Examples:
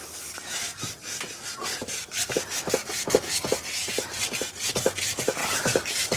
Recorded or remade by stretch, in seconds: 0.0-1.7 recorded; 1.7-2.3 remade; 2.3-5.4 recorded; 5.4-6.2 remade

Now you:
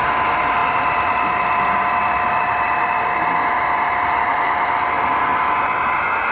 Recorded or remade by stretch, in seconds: 0.0-4.2 recorded; 4.2-4.8 remade; 4.8-6.3 recorded